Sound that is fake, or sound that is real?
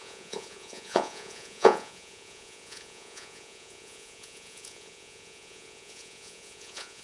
fake